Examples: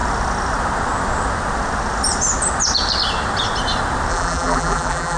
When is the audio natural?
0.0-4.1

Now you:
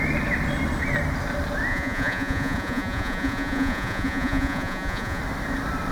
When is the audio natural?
0.0-1.7; 5.2-5.9

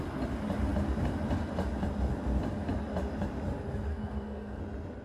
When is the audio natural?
0.0-3.9; 4.6-5.0

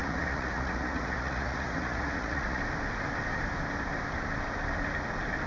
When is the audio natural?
2.6-5.5

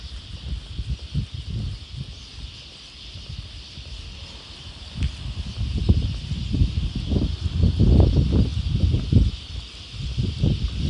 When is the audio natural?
0.0-10.9

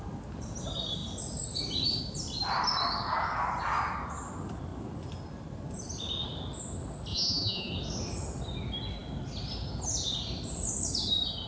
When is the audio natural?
0.0-7.1; 7.7-11.5